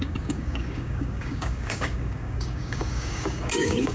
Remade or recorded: remade